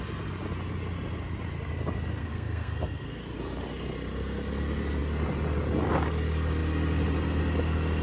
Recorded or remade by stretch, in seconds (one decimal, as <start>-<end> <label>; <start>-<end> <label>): 0.0-2.2 recorded; 2.2-3.2 remade; 3.2-8.0 recorded